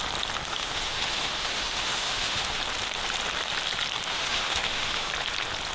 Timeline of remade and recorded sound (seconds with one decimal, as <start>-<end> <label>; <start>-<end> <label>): 0.0-0.5 recorded; 0.5-2.6 remade; 2.6-4.1 recorded; 4.1-5.1 remade; 5.1-5.7 recorded